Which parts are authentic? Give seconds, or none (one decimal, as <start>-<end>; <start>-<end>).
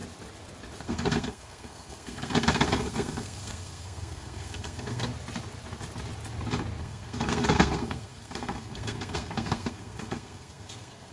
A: 0.0-0.8; 5.1-6.8